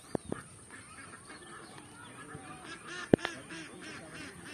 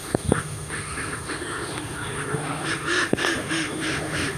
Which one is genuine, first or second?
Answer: first